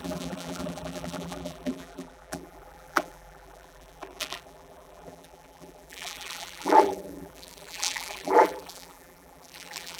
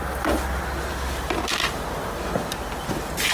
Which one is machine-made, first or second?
first